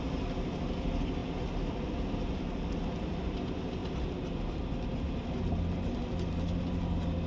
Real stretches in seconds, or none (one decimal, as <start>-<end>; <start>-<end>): 0.0-7.3